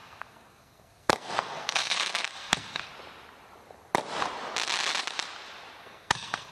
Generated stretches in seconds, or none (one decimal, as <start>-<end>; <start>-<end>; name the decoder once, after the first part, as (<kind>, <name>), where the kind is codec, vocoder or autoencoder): 0.0-2.9 (codec, SNAC); 5.8-6.5